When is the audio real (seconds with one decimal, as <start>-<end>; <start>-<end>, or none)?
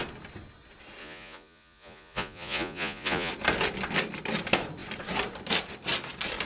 0.0-1.0; 3.3-6.5